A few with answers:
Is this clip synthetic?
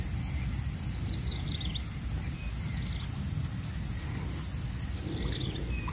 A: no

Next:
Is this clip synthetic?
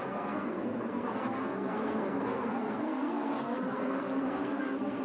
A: yes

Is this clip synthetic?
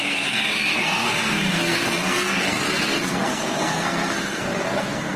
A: yes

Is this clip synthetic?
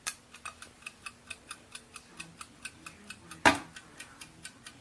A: no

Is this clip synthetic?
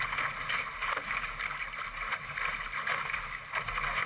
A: no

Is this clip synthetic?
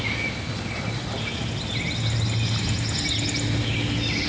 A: no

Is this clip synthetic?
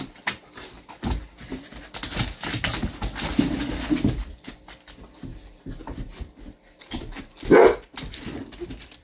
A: no